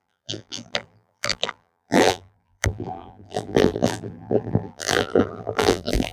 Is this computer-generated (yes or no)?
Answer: yes